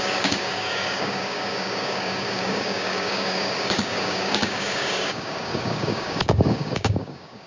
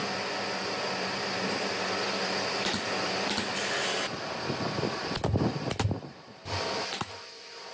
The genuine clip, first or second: second